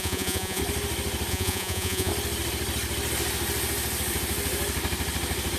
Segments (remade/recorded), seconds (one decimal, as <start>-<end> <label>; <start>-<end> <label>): 0.0-0.6 remade; 0.6-1.3 recorded; 1.3-2.1 remade; 2.1-5.6 recorded